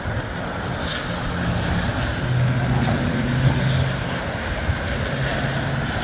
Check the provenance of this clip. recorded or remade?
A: recorded